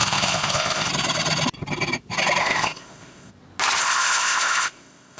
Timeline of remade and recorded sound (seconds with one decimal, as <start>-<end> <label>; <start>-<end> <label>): 0.0-0.9 remade; 0.9-2.4 recorded; 2.4-3.3 remade; 3.3-3.8 recorded; 3.8-5.2 remade